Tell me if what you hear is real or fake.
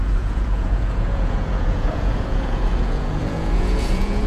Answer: fake